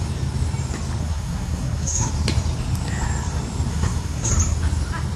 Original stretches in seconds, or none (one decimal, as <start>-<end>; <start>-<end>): 0.0-1.0; 2.1-3.7; 4.3-5.2

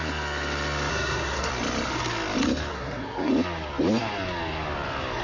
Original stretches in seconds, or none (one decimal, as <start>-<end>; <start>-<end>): 0.0-0.9; 1.5-2.7; 3.3-5.2

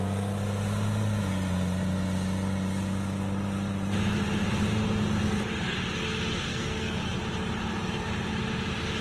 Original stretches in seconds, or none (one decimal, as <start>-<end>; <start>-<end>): 0.0-6.5; 7.0-9.0

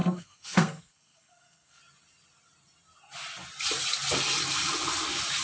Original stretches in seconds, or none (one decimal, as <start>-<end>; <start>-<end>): 1.8-5.4

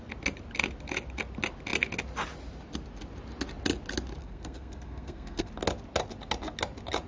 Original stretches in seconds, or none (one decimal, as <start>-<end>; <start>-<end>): 0.0-4.2; 5.5-7.1

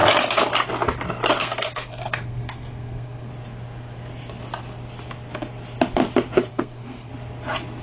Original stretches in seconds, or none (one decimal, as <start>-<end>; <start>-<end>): 0.0-1.4; 3.3-6.5; 7.1-7.8

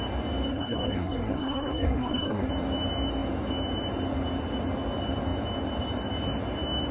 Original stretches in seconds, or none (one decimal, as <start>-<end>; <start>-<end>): 0.0-0.5; 2.5-6.9

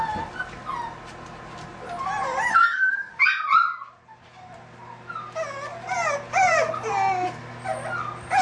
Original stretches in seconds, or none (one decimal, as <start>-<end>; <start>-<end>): 0.0-2.5; 3.1-8.4